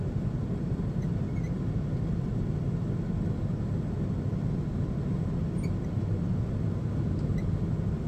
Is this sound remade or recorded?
recorded